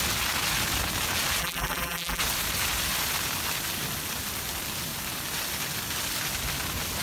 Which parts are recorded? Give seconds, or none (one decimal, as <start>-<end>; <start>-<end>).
0.0-1.4; 2.2-7.0